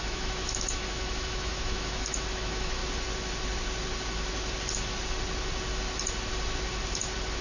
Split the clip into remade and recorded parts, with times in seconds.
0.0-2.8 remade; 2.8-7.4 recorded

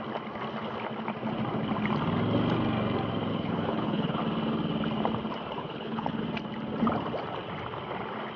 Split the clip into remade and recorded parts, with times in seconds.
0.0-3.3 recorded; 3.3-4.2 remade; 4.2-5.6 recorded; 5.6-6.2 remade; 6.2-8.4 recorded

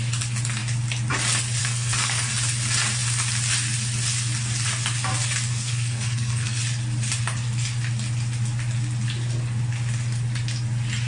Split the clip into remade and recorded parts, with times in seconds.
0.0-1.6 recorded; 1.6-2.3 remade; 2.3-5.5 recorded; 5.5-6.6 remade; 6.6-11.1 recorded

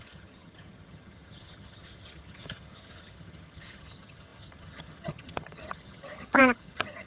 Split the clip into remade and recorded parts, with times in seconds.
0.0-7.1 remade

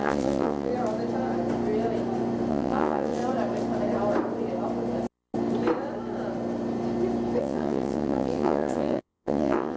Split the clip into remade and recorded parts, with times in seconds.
0.0-0.7 remade; 0.7-2.5 recorded; 2.5-3.2 remade; 3.2-7.4 recorded; 7.4-9.8 remade

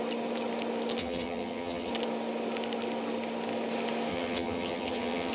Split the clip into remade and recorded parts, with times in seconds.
0.0-1.0 recorded; 1.0-1.9 remade; 1.9-4.1 recorded; 4.1-5.3 remade